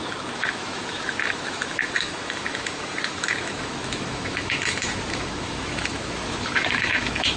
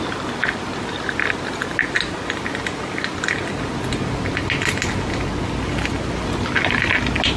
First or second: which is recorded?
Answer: second